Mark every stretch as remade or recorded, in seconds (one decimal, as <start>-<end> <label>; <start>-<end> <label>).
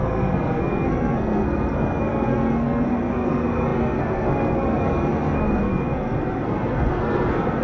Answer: 0.0-7.6 remade